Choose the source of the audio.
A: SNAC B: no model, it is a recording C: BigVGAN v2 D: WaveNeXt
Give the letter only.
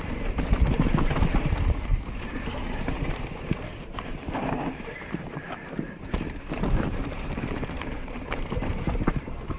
C